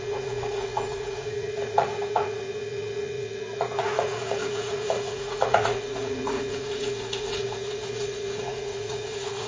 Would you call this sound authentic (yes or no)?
no